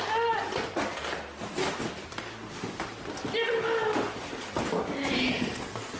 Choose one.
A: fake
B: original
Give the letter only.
B